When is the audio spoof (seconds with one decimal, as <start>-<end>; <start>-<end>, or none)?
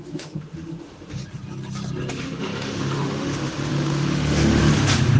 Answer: 0.0-1.2; 2.1-4.6